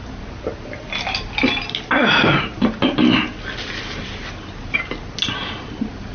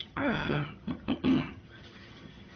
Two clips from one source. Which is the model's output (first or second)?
second